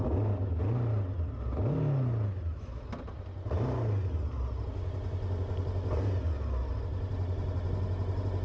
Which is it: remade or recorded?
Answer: recorded